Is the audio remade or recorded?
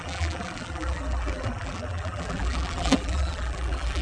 remade